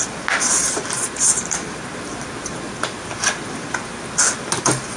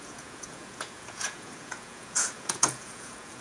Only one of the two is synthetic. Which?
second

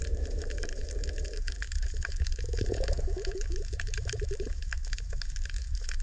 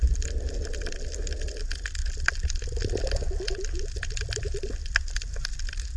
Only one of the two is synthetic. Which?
first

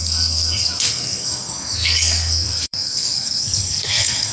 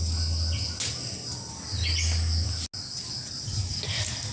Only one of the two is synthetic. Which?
first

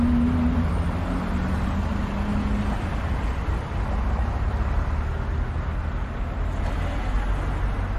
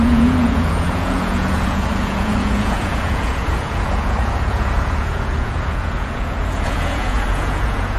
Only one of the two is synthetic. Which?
second